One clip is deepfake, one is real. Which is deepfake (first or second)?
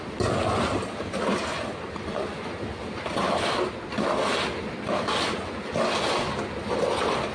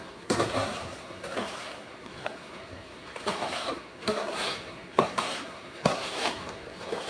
second